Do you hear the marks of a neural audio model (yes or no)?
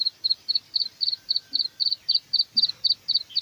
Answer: no